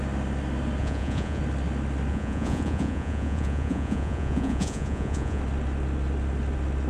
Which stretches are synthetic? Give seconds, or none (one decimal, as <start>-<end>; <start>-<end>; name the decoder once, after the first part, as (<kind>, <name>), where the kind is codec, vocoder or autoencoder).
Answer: 0.8-1.4 (vocoder, Vocos); 2.1-5.4